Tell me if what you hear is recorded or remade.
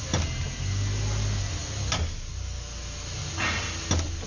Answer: recorded